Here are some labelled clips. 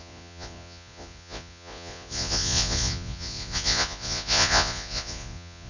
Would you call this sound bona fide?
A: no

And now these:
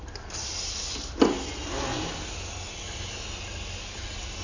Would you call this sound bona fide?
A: yes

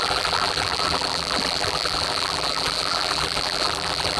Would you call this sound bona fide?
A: no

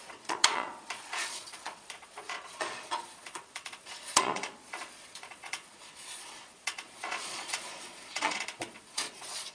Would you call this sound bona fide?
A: no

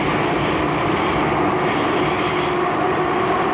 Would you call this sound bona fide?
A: yes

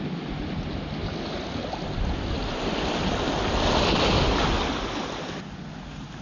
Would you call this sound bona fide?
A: yes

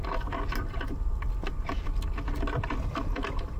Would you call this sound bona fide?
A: yes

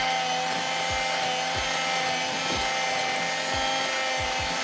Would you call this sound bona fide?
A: yes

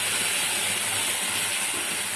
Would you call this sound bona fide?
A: yes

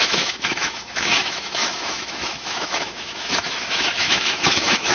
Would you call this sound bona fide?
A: no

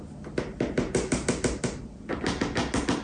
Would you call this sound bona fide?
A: yes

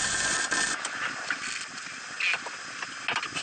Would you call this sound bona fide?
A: yes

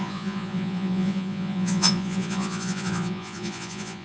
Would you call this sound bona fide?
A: no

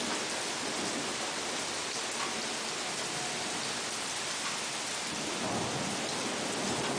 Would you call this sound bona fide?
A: yes